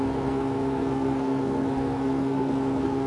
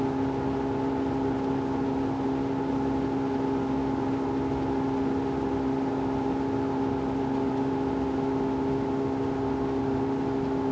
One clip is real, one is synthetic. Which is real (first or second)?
second